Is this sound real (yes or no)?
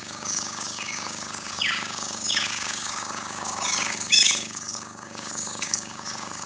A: no